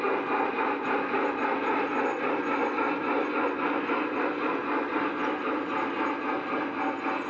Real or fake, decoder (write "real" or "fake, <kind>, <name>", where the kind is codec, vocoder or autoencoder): real